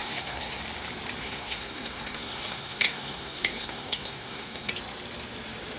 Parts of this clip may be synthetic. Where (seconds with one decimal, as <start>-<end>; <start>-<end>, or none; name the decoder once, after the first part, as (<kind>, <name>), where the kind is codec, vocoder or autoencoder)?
0.0-0.6 (codec, SNAC); 1.2-4.7